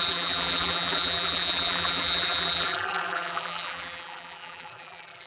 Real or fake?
fake